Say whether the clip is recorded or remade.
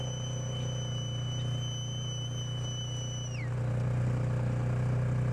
recorded